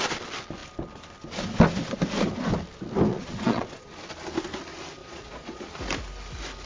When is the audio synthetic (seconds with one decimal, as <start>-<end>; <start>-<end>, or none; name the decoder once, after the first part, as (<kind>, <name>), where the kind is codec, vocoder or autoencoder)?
3.1-3.9 (vocoder, Vocos); 5.0-5.7